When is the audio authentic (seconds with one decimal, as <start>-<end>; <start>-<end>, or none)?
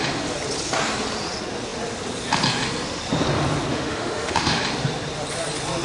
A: 0.0-3.7; 4.6-5.8